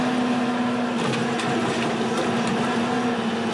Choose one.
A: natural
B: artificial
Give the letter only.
A